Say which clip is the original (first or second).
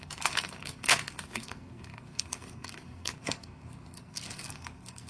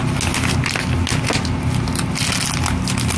second